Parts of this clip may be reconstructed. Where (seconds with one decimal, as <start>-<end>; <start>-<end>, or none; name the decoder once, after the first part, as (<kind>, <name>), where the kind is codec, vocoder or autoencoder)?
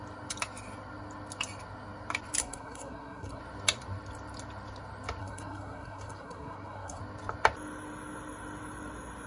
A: 2.4-3.4 (codec, SNAC); 5.2-7.0